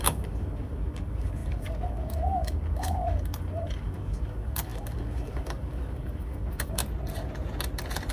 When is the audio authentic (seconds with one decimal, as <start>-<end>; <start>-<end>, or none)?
6.8-8.1